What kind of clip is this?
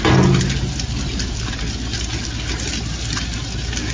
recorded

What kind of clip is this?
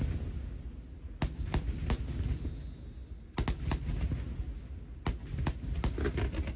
recorded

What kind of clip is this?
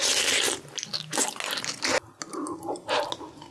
recorded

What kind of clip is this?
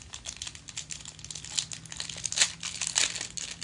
recorded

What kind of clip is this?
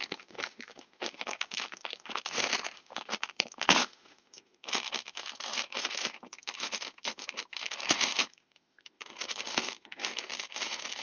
remade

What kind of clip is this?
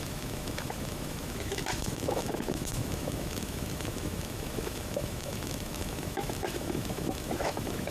remade